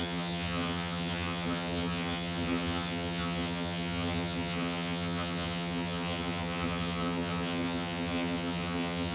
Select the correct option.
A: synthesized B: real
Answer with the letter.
A